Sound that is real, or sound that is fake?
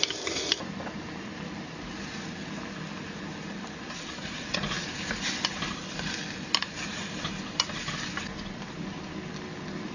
real